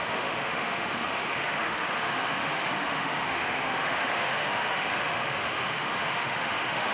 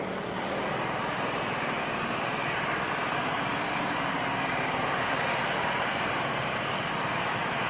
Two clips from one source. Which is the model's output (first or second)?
first